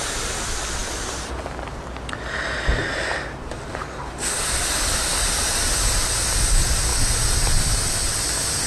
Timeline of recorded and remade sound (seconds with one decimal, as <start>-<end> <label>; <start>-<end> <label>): 0.0-8.7 recorded